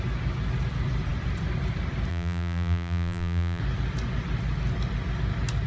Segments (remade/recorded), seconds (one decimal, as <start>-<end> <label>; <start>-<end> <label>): 0.0-2.1 recorded; 2.1-3.6 remade; 3.6-5.7 recorded